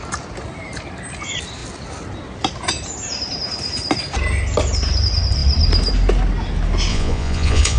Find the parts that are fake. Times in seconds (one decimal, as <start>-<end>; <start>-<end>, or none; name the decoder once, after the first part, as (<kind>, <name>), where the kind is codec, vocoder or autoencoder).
6.9-7.8 (vocoder, Vocos)